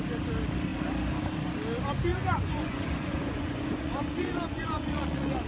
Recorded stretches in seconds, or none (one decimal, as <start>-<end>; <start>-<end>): 0.0-2.1